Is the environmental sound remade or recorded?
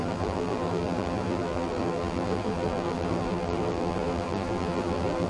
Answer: remade